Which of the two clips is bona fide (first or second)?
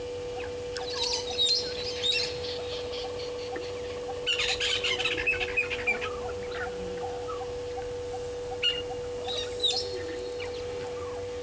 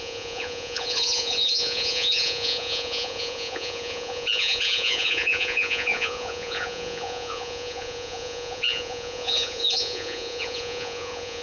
first